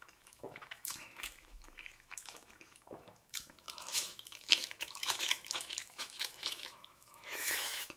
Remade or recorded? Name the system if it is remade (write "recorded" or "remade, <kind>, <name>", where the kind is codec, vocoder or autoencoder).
remade, autoencoder, DAC-VAE